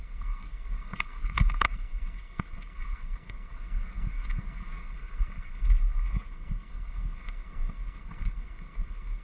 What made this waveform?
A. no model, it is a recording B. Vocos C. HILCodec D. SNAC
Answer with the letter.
D